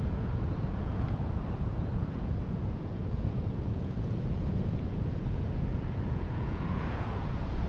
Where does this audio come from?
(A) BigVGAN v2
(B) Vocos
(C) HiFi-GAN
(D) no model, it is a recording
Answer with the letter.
B